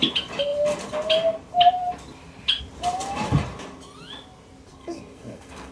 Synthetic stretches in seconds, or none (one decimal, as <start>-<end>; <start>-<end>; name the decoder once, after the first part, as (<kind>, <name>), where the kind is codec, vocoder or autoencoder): 4.7-5.7 (codec, SNAC)